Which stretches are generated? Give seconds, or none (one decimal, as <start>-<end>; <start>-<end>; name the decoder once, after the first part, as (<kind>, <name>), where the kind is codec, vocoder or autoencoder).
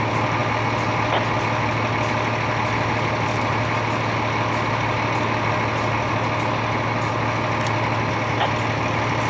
none